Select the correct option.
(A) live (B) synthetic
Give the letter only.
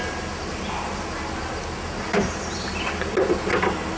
A